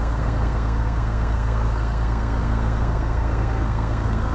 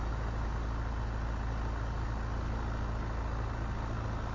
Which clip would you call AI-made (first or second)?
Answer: first